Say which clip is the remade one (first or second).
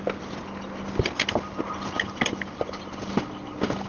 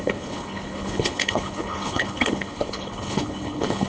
second